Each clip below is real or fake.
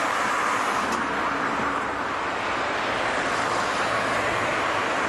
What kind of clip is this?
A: fake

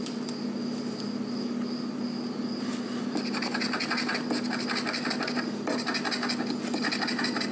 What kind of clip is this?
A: real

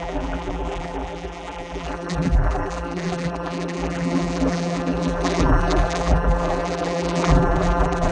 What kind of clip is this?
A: fake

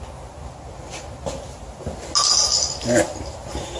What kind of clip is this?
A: real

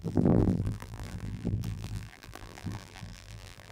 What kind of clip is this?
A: fake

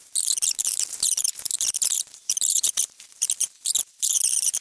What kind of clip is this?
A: fake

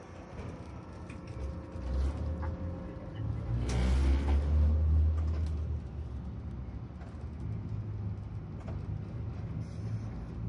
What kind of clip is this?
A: real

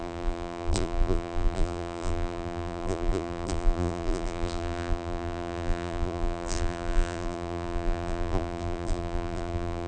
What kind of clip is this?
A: fake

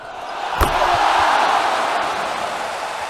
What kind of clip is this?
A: real